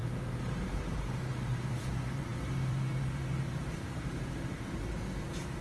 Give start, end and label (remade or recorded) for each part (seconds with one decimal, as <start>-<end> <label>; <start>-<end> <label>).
0.0-5.6 remade